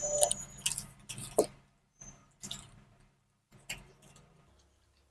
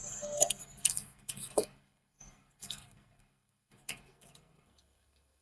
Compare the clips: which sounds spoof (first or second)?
second